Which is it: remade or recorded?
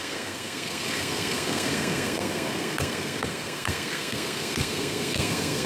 remade